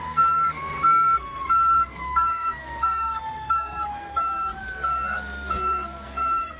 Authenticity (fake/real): fake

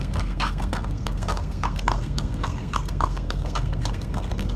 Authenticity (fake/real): fake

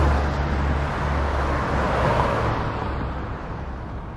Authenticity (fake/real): real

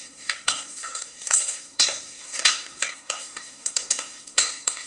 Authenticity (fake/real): fake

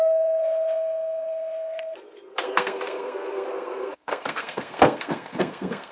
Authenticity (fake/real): fake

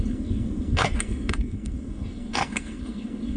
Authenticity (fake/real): fake